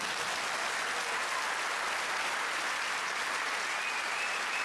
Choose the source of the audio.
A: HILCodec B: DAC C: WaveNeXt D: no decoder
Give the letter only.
D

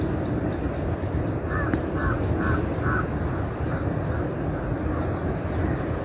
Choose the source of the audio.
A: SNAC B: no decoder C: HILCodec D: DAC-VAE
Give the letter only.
B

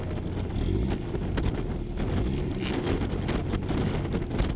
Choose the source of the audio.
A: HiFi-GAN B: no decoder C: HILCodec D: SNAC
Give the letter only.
B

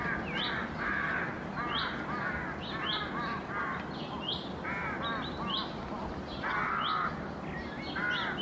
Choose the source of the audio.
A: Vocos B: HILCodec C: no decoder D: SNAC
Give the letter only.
C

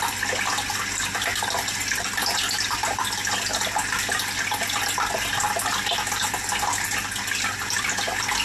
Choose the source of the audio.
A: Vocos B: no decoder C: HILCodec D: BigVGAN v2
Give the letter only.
B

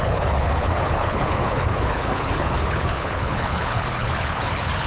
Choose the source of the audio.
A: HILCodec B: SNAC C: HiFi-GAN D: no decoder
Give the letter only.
A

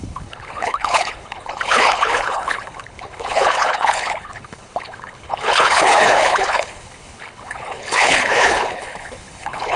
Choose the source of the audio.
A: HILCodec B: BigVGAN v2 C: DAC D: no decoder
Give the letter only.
A